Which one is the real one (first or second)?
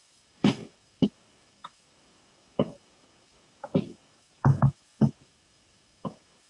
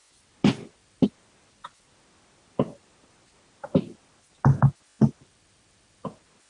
second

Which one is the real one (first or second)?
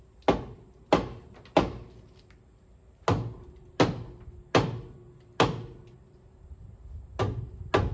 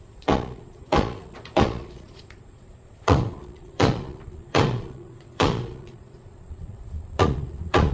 first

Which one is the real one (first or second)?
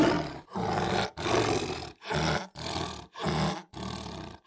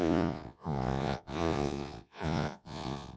first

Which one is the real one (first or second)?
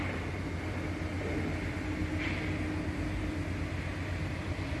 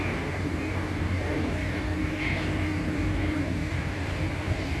first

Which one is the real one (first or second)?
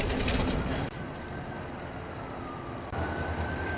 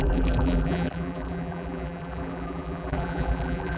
first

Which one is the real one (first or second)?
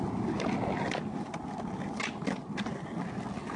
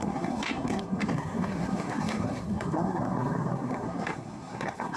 first